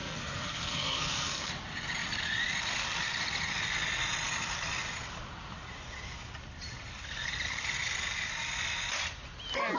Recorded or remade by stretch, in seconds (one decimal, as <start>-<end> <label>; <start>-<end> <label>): 0.0-1.5 remade; 1.5-9.8 recorded